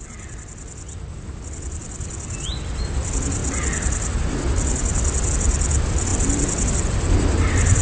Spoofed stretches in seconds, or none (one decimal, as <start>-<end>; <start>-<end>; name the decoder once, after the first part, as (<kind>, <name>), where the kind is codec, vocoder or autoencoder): none